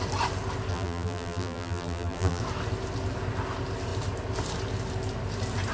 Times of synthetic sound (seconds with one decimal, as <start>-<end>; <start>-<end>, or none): 0.7-2.4